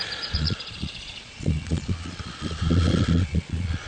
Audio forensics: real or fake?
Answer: fake